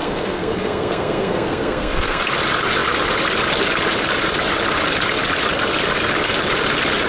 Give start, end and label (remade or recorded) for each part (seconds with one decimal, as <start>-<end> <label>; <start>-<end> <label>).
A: 0.0-2.2 remade; 2.2-7.1 recorded